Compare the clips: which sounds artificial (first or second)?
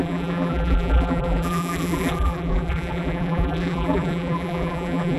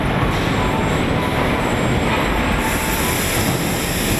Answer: first